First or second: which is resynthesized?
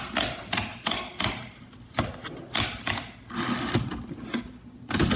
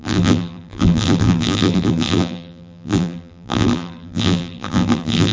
second